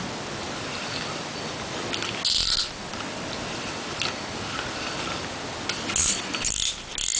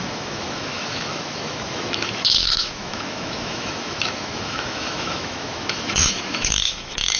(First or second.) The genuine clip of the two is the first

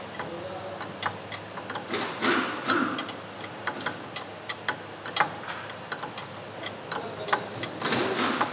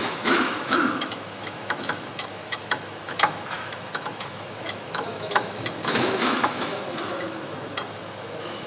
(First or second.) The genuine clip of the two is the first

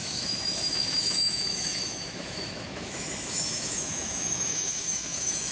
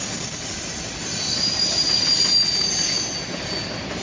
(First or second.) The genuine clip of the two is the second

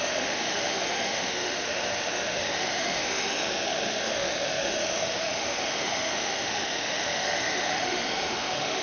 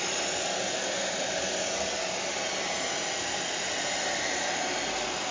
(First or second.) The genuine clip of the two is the second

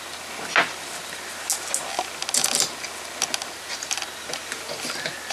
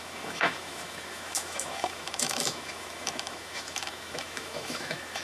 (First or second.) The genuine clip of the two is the first